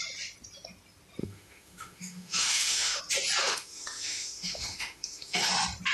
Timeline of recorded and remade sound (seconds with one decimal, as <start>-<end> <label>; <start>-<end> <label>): 0.0-1.2 recorded; 1.2-3.0 remade; 3.0-3.4 recorded; 3.4-5.5 remade; 5.5-5.9 recorded